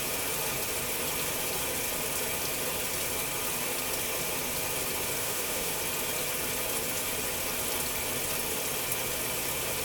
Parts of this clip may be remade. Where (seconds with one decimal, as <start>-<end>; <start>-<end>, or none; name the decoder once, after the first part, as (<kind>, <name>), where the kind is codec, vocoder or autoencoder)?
5.2-5.7 (autoencoder, DAC-VAE)

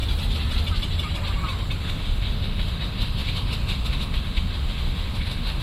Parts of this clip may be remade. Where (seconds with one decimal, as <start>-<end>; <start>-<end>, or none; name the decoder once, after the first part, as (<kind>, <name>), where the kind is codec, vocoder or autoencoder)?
1.8-5.6 (autoencoder, DAC-VAE)

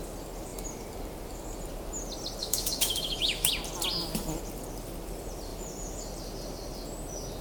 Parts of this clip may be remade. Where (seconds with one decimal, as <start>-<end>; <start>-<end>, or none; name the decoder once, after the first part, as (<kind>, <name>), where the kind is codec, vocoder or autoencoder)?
2.4-3.5 (autoencoder, DAC-VAE)

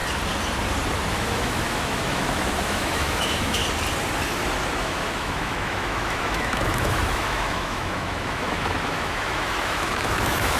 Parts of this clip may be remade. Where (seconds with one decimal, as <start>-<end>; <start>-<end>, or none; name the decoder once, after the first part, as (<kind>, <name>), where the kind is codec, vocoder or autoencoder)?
1.1-3.6 (autoencoder, DAC-VAE); 4.8-10.6

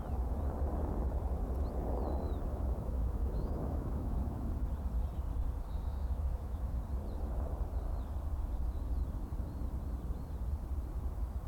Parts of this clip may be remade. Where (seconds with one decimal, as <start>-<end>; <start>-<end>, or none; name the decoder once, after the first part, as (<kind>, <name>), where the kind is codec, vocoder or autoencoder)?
2.5-4.5 (autoencoder, DAC-VAE); 5.9-6.8

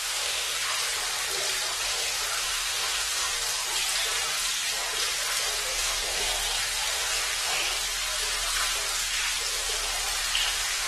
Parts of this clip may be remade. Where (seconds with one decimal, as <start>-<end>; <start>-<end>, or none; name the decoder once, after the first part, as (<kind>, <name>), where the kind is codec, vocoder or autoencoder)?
0.0-0.5 (autoencoder, DAC-VAE); 2.4-3.3; 5.7-6.3; 6.9-7.6; 10.5-10.9